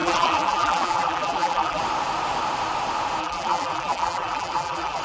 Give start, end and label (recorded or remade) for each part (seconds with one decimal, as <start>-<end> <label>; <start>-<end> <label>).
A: 0.0-1.8 remade; 1.8-3.2 recorded; 3.2-5.0 remade